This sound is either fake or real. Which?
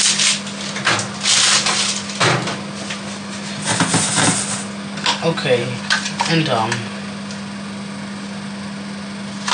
real